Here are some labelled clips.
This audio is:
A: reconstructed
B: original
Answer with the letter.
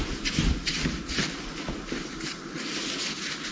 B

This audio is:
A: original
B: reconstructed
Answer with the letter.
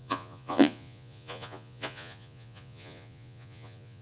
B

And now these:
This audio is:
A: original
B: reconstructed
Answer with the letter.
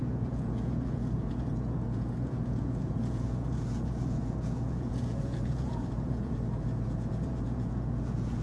B